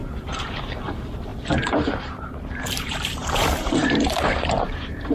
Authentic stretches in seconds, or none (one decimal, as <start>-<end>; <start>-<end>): none

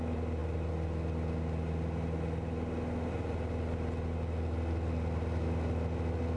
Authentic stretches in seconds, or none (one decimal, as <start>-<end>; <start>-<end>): 0.0-6.4

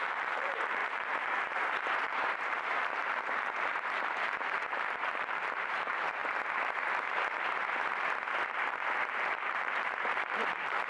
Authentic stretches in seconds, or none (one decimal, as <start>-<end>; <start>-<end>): 6.2-8.3

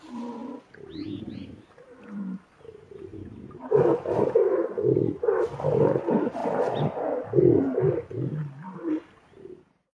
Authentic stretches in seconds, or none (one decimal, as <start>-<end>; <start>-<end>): 0.4-1.2; 3.1-4.5; 6.4-7.8